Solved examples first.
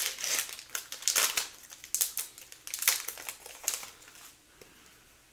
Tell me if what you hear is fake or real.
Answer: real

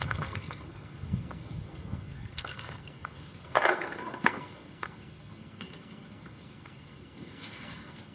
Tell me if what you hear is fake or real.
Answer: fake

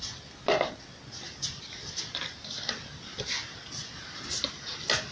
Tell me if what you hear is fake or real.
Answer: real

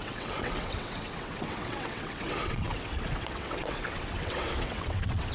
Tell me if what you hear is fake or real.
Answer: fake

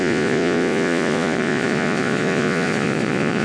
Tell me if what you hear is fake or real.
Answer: fake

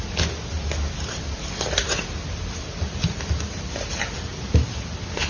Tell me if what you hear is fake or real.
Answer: real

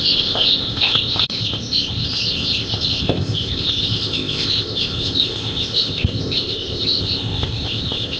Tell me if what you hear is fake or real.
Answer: fake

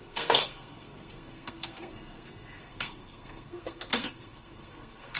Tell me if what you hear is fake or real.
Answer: fake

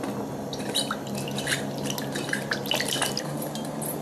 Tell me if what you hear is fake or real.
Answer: real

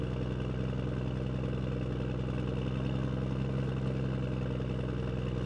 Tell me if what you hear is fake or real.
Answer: real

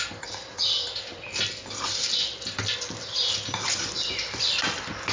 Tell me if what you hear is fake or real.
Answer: fake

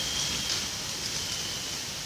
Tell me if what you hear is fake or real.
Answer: real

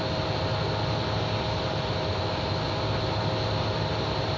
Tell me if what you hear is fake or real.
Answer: real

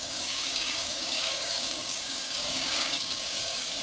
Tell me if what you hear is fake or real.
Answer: fake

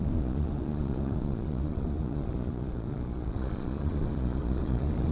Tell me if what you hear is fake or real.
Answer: fake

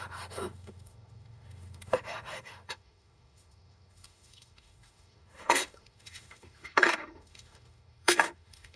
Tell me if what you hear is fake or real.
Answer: fake